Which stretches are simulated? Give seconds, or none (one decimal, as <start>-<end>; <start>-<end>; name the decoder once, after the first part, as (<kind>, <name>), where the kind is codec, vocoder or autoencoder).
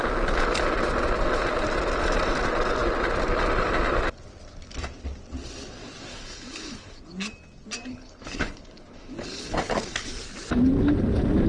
6.1-7.0 (codec, HILCodec); 7.9-10.2